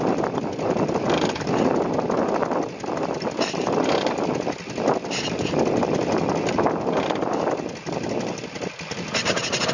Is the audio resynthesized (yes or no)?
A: no